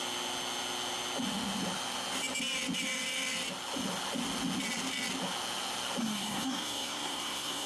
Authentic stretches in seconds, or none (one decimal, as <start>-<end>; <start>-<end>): 0.0-6.0